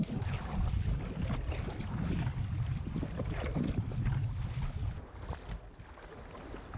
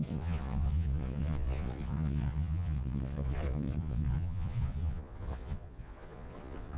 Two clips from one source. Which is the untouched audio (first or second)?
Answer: first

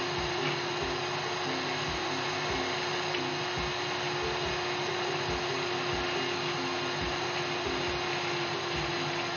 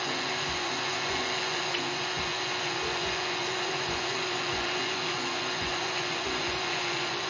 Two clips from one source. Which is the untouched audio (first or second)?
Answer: first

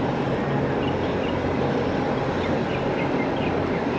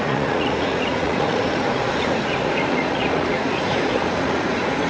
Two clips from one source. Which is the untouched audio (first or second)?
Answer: first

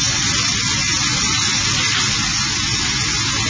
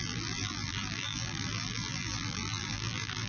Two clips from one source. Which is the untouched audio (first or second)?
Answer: first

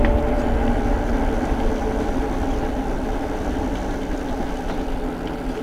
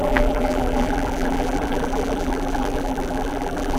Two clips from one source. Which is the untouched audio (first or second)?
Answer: first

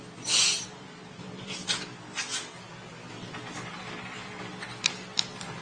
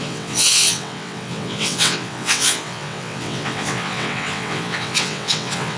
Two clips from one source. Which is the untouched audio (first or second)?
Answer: first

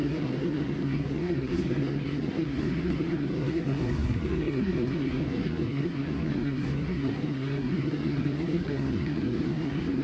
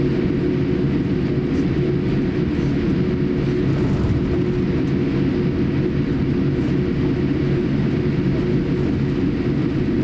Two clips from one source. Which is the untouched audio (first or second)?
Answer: second